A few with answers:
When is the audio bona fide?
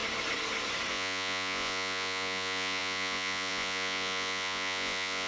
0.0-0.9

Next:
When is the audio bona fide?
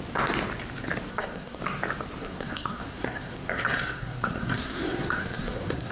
0.0-1.1; 1.6-2.2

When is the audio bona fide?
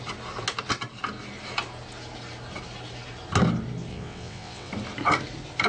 0.0-3.9; 4.7-5.7